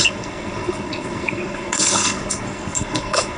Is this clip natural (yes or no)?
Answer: no